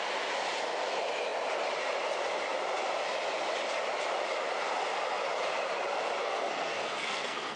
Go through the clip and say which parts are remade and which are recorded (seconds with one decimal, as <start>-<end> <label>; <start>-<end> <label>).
0.0-6.2 recorded; 6.2-7.6 remade